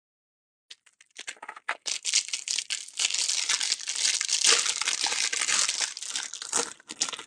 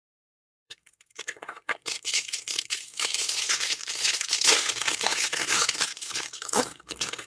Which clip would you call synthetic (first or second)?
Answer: second